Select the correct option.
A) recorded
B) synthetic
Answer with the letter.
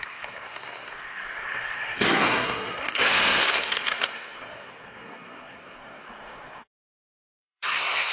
B